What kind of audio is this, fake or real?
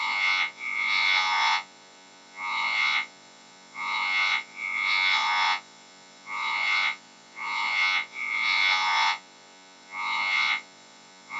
fake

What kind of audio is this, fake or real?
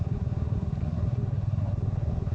fake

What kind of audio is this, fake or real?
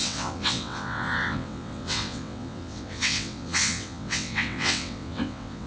fake